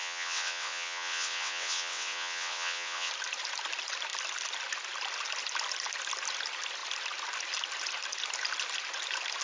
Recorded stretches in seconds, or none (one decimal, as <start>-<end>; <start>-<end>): 3.1-9.4